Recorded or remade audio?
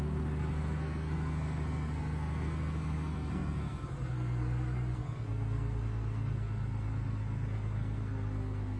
remade